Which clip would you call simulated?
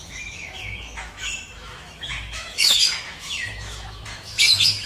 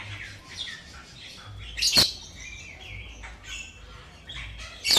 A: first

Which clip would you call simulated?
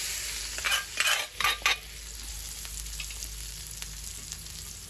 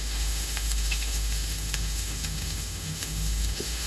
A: second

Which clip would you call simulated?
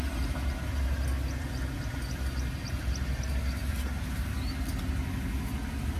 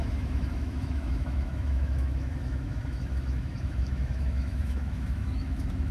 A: second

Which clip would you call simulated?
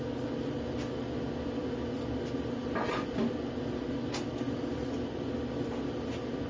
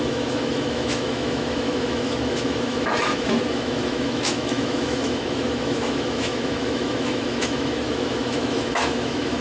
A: second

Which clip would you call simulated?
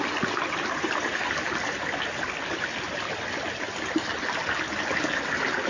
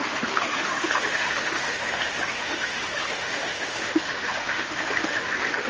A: second